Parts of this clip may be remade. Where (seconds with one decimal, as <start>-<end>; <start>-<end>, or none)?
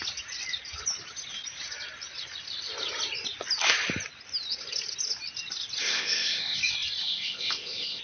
5.8-6.6; 7.0-8.0